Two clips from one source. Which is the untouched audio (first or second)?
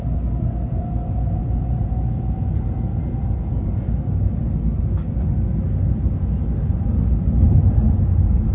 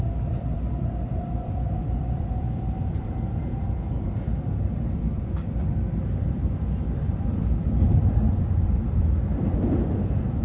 first